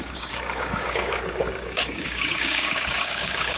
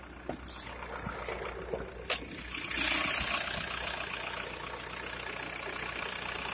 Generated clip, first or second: first